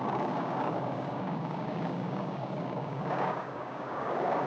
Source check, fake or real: fake